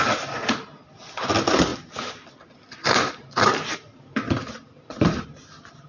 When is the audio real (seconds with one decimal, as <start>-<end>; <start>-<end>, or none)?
0.0-5.9